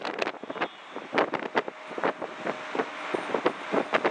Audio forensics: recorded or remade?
recorded